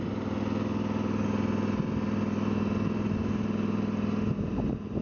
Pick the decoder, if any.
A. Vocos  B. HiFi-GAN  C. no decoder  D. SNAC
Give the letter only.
C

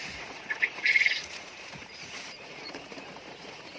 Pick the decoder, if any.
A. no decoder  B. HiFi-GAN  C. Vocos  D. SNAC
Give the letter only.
C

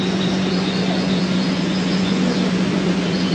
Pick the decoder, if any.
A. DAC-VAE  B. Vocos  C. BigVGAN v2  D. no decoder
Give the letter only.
B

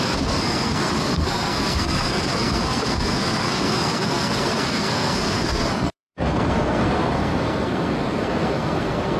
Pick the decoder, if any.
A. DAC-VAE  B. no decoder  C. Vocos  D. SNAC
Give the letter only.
D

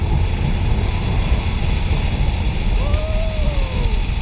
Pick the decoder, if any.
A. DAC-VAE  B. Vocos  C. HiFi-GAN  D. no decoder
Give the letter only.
D